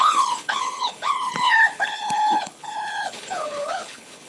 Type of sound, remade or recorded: remade